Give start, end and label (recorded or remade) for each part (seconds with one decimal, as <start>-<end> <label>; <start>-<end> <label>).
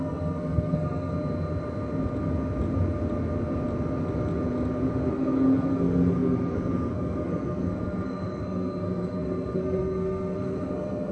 0.0-1.1 remade; 1.1-5.1 recorded; 5.1-11.1 remade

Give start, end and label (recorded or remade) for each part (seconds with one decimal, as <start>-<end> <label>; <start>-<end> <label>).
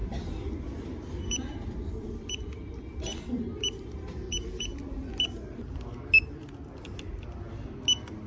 0.0-2.3 remade; 2.3-3.1 recorded; 3.1-4.3 remade; 4.3-8.3 recorded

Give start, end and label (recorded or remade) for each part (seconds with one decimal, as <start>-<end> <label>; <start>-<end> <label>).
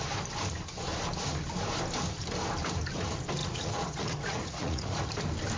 0.0-3.4 recorded; 3.4-5.1 remade; 5.1-5.6 recorded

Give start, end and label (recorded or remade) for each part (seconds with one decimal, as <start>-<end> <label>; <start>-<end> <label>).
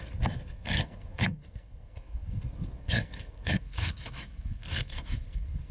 0.0-5.7 remade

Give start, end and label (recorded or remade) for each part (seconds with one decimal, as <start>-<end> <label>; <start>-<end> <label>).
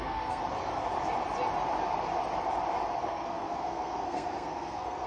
0.0-0.4 remade; 0.4-3.0 recorded; 3.0-5.1 remade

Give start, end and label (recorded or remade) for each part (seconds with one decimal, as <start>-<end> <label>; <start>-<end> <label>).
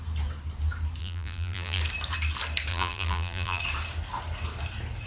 0.0-1.0 recorded; 1.0-1.8 remade; 1.8-2.7 recorded; 2.7-3.6 remade; 3.6-5.1 recorded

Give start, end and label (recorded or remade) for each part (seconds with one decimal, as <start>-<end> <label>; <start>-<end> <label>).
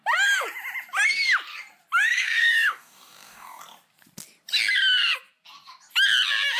0.0-2.4 recorded; 2.4-3.6 remade; 3.6-6.6 recorded